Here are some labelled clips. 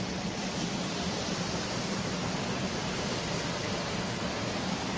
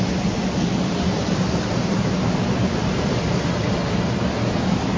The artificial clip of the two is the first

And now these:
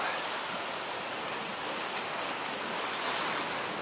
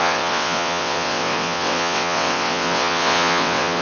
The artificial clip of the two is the second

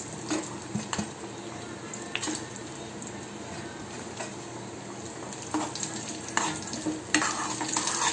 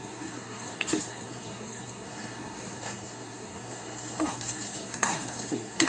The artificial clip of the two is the second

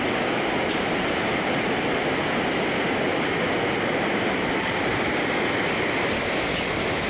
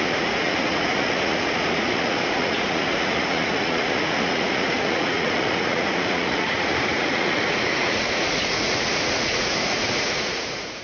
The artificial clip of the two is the second